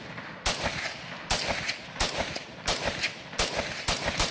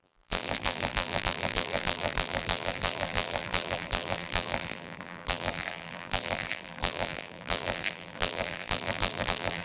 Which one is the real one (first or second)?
first